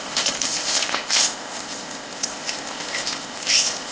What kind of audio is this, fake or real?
fake